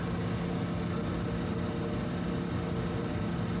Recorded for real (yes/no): yes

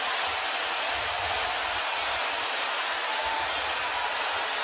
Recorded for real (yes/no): yes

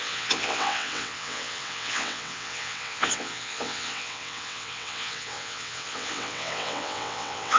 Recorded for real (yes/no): no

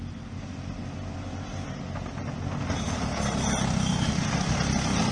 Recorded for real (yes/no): yes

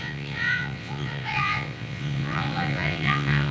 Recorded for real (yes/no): no